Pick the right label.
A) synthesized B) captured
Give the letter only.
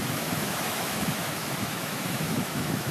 A